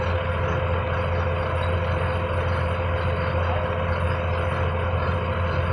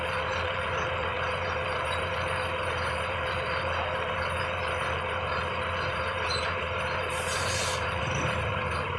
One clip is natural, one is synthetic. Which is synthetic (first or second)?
second